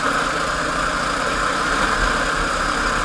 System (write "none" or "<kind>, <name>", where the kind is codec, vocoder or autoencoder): none